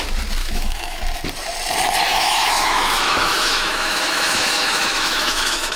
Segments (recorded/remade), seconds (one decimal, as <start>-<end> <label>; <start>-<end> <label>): 0.0-0.4 recorded; 0.4-1.0 remade; 1.0-2.1 recorded; 2.1-5.8 remade